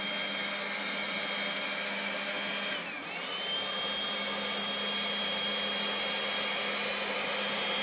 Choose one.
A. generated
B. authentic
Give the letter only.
B